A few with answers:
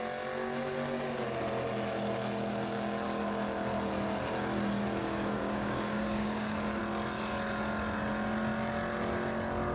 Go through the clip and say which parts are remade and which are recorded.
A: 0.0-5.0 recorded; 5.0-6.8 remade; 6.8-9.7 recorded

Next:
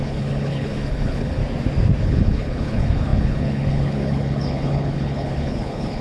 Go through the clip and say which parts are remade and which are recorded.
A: 0.0-1.4 remade; 1.4-2.0 recorded; 2.0-6.0 remade